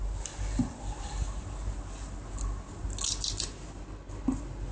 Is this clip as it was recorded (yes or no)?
yes